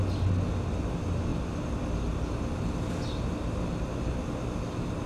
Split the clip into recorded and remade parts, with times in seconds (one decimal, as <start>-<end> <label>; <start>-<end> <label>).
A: 0.0-5.1 recorded